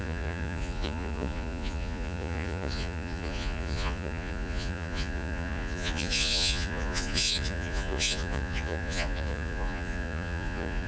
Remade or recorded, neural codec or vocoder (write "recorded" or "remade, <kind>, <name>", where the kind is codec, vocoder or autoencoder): remade, vocoder, Vocos